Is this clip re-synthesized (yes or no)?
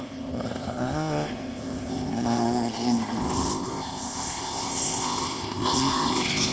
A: yes